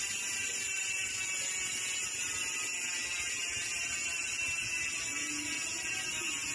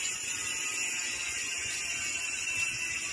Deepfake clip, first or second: second